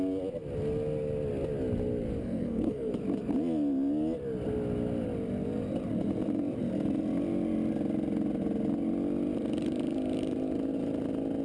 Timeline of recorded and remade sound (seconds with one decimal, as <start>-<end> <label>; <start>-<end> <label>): 0.0-2.2 recorded; 2.2-2.9 remade; 2.9-11.4 recorded